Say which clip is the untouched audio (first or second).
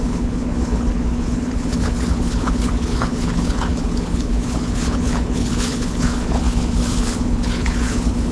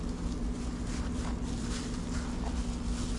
second